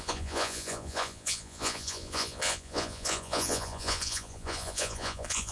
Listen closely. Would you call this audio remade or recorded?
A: remade